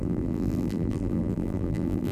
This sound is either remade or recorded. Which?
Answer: remade